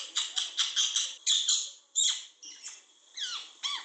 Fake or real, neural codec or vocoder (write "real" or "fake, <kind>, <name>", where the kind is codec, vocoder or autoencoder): real